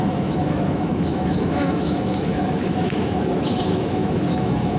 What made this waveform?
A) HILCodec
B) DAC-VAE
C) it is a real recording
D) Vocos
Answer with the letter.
B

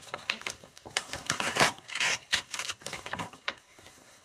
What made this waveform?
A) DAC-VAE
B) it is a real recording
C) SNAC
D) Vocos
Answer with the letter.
C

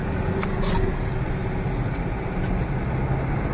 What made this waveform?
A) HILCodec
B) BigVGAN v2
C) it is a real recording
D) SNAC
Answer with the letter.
C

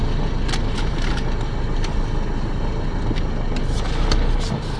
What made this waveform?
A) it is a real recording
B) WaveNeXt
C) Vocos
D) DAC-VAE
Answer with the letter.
A